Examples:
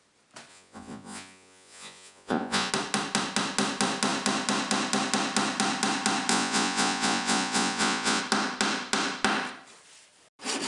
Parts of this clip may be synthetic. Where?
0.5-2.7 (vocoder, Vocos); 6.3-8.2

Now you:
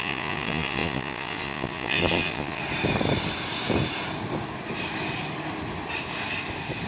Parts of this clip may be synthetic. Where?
0.0-2.6 (vocoder, Vocos)

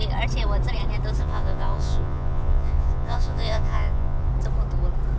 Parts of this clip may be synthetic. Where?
1.2-4.3 (vocoder, Vocos)